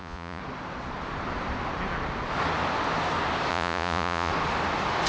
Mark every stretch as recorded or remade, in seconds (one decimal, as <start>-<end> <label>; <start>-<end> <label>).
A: 0.0-0.4 remade; 0.4-3.5 recorded; 3.5-4.3 remade; 4.3-5.1 recorded